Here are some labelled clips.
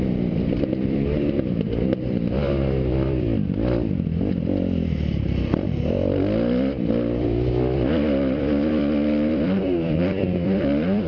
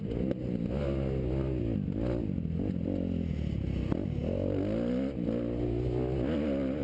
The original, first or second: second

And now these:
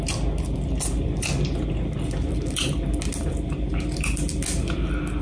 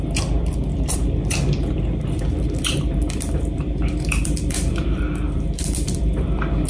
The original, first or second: first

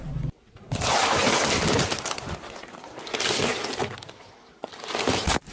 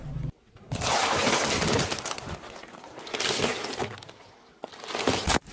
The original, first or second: second